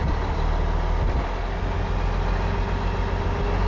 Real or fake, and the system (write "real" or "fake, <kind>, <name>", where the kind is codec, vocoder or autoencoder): real